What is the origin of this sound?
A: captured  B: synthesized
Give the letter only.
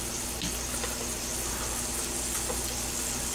A